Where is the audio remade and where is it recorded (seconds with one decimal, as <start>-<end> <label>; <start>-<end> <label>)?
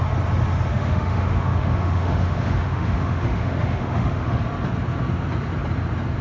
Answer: 0.0-0.7 recorded; 0.7-4.4 remade; 4.4-6.2 recorded